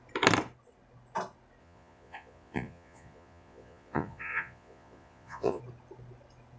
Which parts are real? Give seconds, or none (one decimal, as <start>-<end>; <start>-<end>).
0.0-1.6; 5.6-6.6